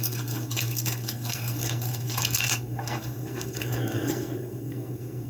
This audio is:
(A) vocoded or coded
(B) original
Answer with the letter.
A